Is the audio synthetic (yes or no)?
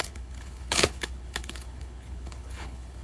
yes